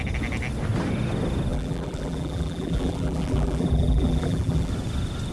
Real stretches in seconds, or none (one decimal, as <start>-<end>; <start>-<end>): 0.0-1.5; 4.7-5.3